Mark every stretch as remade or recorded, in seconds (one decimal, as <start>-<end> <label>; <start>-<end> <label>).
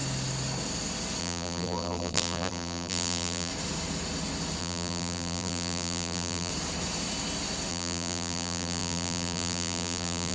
0.0-1.2 recorded; 1.2-3.5 remade; 3.5-4.6 recorded; 4.6-6.5 remade; 6.5-7.7 recorded; 7.7-10.3 remade